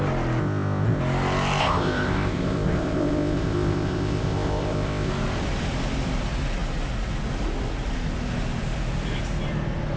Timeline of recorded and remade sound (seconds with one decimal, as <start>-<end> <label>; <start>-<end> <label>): 0.0-0.4 recorded; 0.4-1.0 remade; 1.0-1.6 recorded; 1.6-5.1 remade; 5.1-10.0 recorded